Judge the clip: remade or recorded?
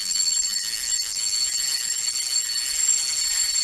recorded